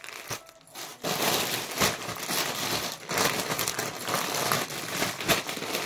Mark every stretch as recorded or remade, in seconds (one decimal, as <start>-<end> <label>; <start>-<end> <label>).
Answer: 0.0-5.9 recorded